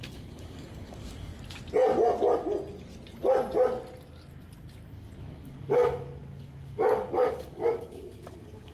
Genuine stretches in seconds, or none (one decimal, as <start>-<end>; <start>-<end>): 1.3-5.2